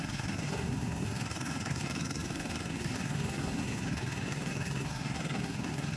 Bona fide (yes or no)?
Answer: no